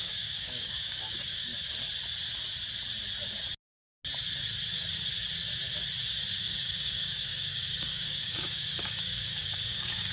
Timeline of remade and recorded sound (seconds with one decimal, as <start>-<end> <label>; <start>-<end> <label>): 0.0-1.5 remade; 1.5-6.4 recorded; 6.4-10.1 remade